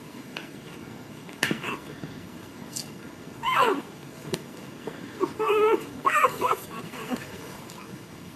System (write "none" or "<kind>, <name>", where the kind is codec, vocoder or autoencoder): codec, SNAC